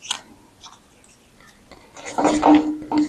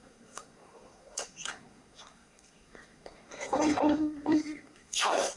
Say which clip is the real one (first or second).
first